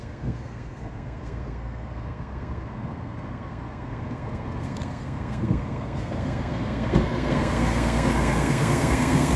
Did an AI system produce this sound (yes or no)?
yes